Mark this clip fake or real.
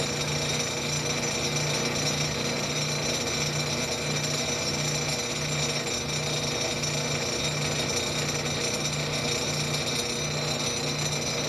real